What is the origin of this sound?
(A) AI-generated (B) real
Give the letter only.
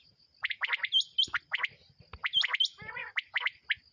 B